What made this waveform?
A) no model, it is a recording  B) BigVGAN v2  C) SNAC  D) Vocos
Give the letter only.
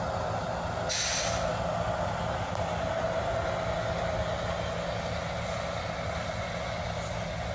A